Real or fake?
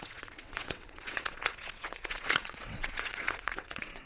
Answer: fake